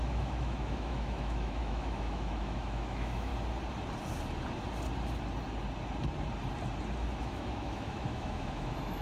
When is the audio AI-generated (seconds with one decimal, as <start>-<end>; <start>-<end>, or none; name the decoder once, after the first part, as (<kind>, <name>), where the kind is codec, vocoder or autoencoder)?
0.0-3.3 (autoencoder, DAC-VAE); 7.2-9.0